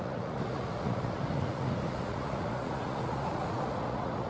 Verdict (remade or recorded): remade